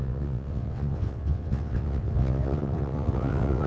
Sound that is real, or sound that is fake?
fake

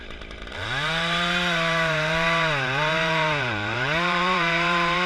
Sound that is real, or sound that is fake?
fake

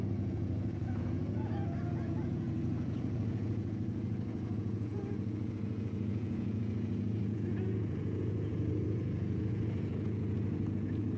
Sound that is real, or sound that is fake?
fake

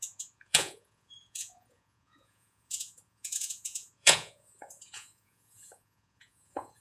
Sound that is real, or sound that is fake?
fake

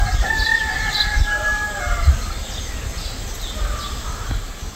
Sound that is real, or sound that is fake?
real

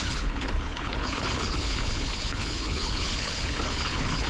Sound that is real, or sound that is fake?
fake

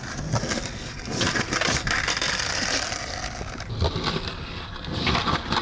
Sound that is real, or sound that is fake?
real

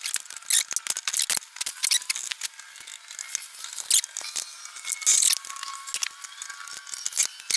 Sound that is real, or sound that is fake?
real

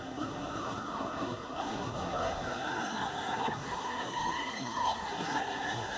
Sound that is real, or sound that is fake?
fake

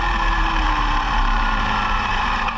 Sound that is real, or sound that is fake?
fake